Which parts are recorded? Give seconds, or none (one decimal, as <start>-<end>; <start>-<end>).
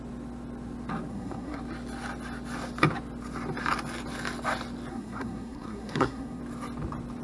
0.0-1.1; 1.6-4.9; 6.4-7.2